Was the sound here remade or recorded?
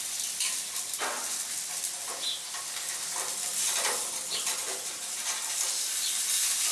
recorded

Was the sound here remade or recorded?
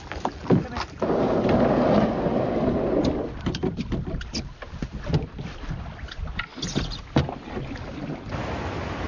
recorded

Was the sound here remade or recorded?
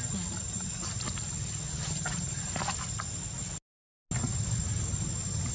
recorded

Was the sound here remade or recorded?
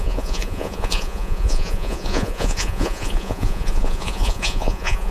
remade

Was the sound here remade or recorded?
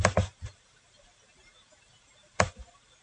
recorded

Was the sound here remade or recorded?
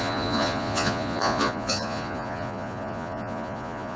remade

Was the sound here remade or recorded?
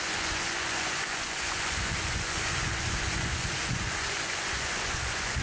remade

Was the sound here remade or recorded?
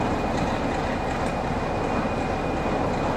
recorded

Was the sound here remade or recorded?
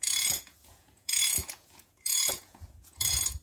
remade